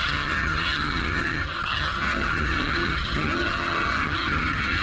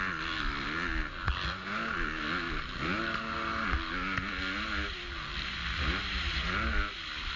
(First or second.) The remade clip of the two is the first